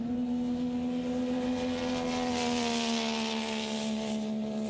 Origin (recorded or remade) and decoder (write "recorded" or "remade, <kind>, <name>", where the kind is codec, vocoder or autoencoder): recorded